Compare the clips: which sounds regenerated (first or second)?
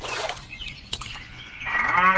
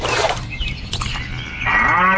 first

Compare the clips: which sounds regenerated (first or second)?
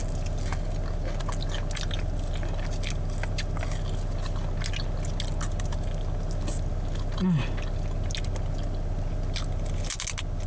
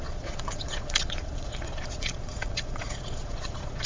second